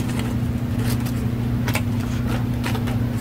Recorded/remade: recorded